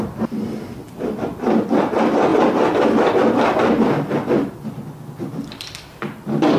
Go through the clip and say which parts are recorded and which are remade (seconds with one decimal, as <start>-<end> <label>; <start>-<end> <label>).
0.0-6.6 recorded